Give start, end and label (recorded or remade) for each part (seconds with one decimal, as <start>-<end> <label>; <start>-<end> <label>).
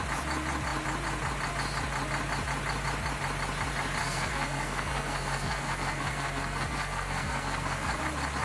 0.0-4.0 recorded; 4.0-8.0 remade; 8.0-8.4 recorded